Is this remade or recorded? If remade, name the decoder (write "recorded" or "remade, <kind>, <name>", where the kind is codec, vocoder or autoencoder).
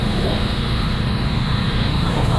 remade, autoencoder, DAC-VAE